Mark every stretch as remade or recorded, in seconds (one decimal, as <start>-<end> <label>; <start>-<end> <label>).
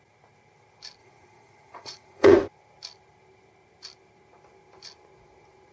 0.0-1.0 recorded; 1.0-2.3 remade; 2.3-5.7 recorded